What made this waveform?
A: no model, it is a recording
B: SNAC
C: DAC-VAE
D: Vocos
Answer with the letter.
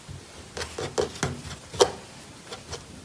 A